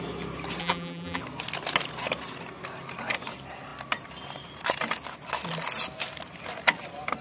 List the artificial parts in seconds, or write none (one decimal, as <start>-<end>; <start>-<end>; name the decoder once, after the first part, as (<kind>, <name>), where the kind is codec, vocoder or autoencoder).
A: 0.6-1.2 (vocoder, BigVGAN v2)